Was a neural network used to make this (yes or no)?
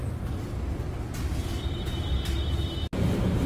no